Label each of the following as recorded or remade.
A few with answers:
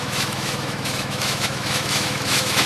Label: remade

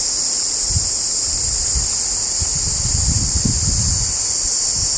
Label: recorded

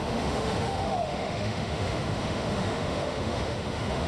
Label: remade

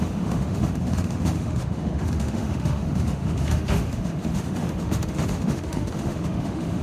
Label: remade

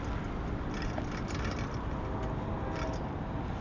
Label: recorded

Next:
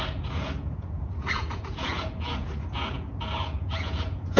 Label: remade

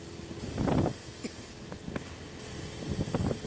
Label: recorded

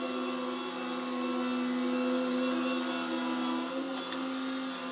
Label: recorded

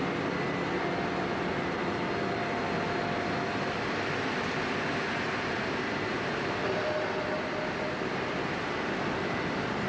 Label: recorded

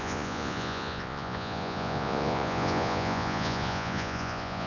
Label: remade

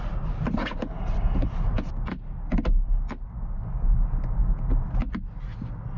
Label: recorded